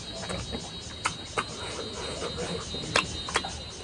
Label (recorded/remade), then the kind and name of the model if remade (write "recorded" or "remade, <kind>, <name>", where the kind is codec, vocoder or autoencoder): recorded